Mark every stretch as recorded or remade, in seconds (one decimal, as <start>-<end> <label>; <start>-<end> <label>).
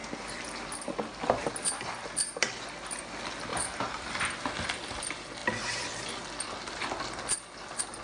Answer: 0.0-8.0 recorded